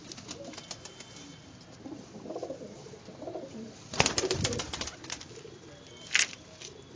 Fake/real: real